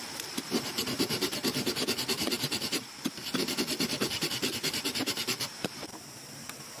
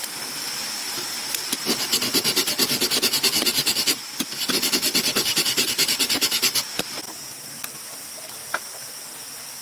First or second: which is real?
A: second